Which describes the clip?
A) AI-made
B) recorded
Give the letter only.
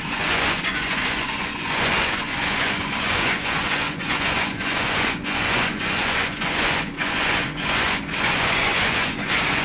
A